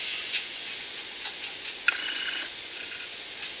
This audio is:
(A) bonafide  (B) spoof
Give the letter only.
B